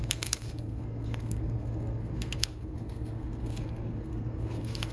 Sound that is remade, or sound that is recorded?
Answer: remade